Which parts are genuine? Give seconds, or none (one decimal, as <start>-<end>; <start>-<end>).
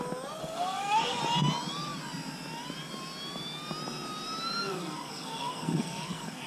0.0-0.4; 1.2-4.7